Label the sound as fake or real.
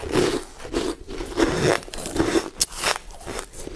real